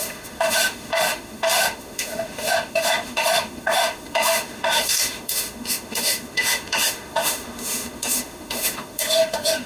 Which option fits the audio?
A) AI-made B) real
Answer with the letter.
A